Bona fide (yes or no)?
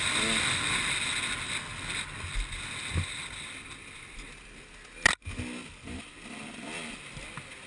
yes